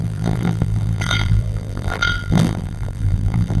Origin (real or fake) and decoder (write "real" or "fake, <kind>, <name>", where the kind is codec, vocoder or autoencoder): fake, vocoder, BigVGAN v2